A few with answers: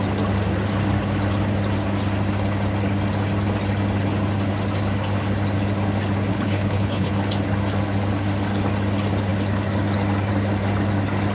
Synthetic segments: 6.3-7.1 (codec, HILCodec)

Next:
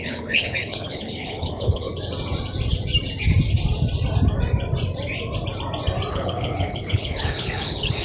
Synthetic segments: 0.0-1.9 (codec, HILCodec); 6.1-8.0

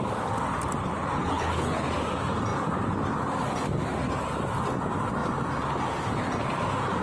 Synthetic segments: 0.8-1.7 (codec, HILCodec)

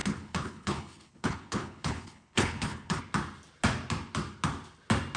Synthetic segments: 0.0-3.0 (codec, HILCodec)

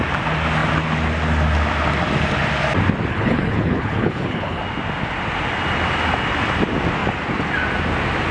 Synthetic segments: 3.1-4.6 (codec, HILCodec)